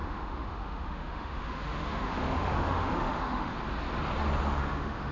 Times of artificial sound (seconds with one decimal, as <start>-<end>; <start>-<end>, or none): 0.0-3.5; 4.6-5.1